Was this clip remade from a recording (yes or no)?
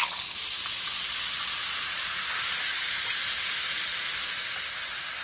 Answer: no